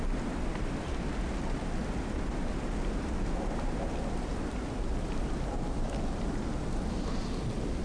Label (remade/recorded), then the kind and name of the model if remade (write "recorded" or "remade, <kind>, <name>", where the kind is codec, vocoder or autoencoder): recorded